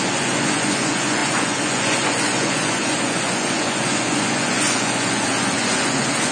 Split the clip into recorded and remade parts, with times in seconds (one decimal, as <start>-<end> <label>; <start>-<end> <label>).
0.0-6.3 remade